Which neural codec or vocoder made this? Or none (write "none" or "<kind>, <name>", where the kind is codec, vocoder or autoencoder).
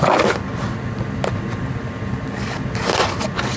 none